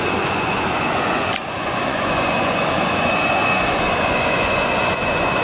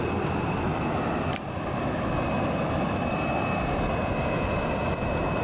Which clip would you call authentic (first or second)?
second